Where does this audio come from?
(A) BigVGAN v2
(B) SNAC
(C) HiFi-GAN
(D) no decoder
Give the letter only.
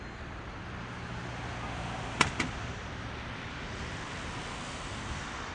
D